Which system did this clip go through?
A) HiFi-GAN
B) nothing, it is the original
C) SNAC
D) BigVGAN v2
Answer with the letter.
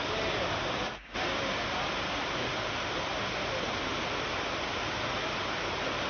B